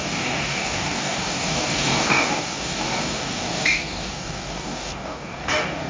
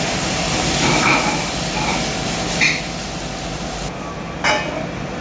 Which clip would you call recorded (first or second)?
second